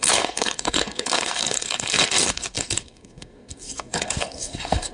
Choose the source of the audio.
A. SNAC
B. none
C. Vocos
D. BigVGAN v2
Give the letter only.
A